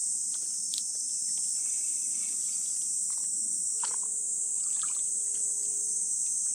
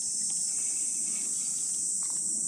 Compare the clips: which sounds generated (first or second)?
first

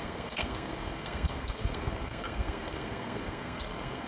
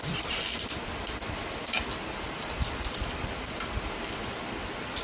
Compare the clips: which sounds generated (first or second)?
first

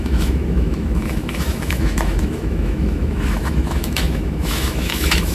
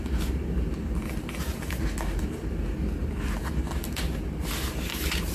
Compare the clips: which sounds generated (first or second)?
first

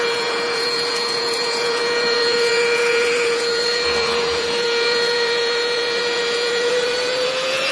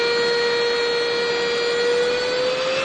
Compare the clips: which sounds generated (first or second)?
first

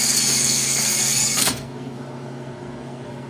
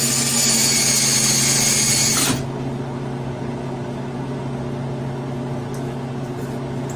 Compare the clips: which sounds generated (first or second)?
first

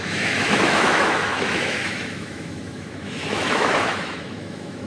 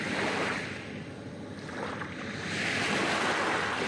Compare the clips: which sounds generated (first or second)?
first